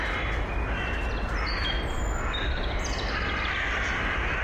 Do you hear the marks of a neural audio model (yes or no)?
no